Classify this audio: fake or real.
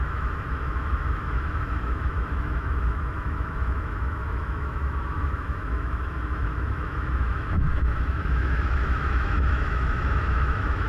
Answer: fake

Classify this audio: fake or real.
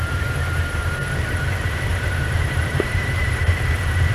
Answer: fake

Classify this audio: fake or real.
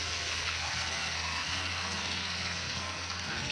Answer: fake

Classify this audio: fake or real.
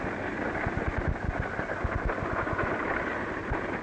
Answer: real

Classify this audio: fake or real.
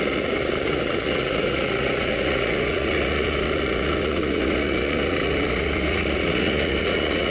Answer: fake